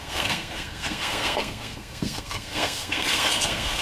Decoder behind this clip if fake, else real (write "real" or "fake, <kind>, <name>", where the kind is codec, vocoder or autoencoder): fake, codec, SNAC